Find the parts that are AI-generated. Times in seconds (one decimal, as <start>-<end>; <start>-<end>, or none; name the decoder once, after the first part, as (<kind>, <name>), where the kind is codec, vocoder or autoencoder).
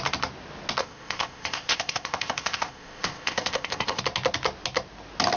0.8-4.0 (codec, ZipCodec)